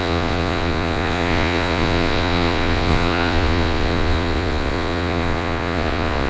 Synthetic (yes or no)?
yes